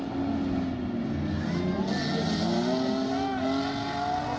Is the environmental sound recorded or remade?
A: recorded